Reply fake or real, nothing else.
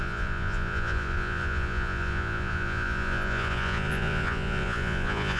fake